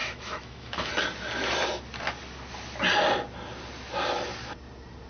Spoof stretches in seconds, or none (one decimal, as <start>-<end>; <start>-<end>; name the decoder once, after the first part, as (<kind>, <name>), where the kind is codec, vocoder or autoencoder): 0.0-0.9 (autoencoder, DAC-VAE)